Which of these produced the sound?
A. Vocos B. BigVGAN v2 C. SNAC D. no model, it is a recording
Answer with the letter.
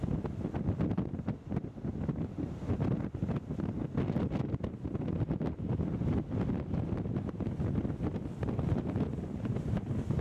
D